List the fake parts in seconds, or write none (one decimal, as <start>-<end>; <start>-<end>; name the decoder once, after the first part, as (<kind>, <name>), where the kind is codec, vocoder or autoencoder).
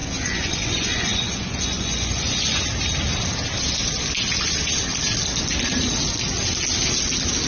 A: 0.0-2.6 (vocoder, Vocos)